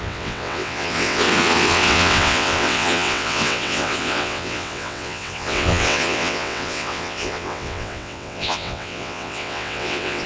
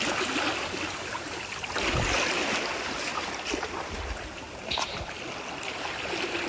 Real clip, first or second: second